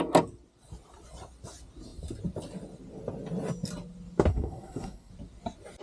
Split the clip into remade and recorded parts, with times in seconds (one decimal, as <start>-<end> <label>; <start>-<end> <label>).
0.0-4.3 recorded; 4.3-5.1 remade; 5.1-5.8 recorded